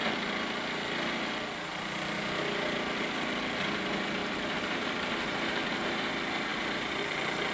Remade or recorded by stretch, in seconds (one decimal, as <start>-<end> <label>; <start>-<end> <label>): 0.0-1.7 recorded; 1.7-2.4 remade; 2.4-4.2 recorded; 4.2-6.1 remade; 6.1-6.5 recorded; 6.5-7.0 remade; 7.0-7.5 recorded